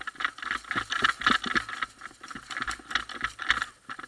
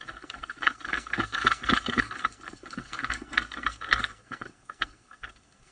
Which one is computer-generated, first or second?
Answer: second